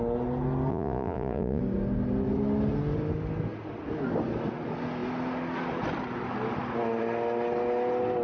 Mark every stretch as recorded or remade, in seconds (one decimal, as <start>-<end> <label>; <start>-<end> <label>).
0.0-0.7 recorded; 0.7-1.6 remade; 1.6-8.2 recorded